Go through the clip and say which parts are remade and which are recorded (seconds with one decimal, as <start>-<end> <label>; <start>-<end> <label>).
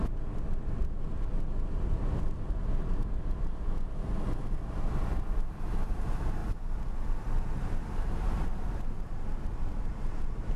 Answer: 0.0-10.6 recorded